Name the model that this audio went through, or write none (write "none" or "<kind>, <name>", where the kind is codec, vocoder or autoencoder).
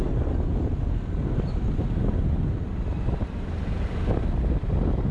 none